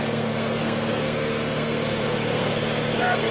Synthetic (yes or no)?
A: yes